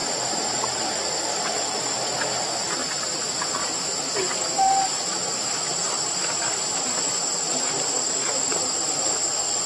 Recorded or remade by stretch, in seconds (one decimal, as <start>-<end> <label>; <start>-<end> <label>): 0.0-9.7 remade